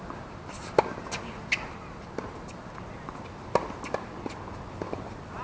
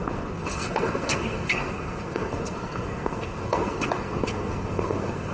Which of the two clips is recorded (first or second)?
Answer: first